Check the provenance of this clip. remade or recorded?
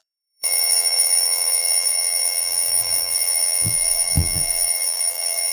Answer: remade